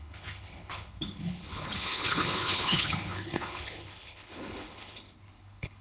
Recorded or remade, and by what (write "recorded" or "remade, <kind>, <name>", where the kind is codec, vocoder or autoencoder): remade, codec, HILCodec